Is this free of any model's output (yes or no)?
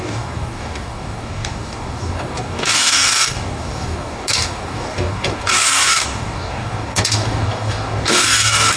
no